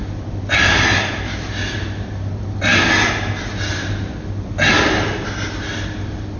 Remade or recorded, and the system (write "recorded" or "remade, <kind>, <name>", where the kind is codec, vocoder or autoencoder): recorded